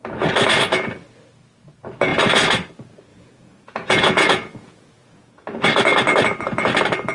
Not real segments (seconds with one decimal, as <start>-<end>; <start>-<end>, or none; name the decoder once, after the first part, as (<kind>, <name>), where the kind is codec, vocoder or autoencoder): 3.1-5.3 (vocoder, Vocos)